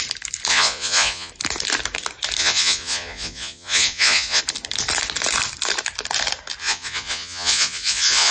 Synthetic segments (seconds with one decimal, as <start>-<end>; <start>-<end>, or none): 0.5-1.3; 2.4-4.4; 6.6-8.3